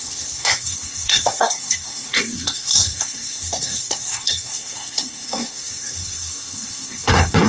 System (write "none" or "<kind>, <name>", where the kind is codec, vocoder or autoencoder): codec, SNAC